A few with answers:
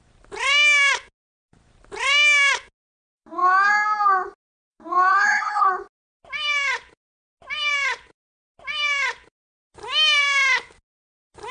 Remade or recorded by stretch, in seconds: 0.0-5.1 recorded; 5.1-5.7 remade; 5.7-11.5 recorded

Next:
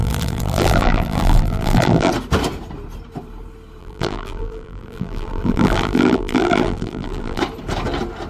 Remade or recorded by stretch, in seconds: 0.0-2.1 remade; 2.1-3.8 recorded; 3.8-7.4 remade; 7.4-8.3 recorded

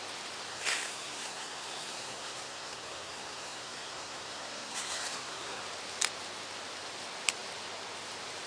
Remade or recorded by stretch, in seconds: 0.0-0.5 recorded; 0.5-5.6 remade; 5.6-8.5 recorded

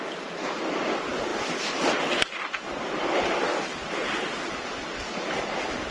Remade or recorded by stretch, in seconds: 0.0-5.9 recorded

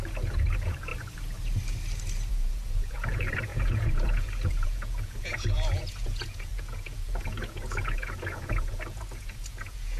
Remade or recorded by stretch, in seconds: 0.0-0.9 remade; 0.9-2.3 recorded; 2.3-10.0 remade

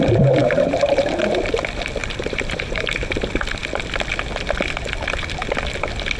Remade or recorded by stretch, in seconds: 0.0-0.4 recorded; 0.4-1.2 remade; 1.2-2.0 recorded; 2.0-3.2 remade; 3.2-6.2 recorded